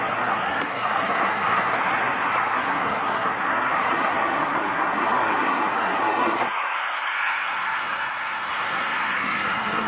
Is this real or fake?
fake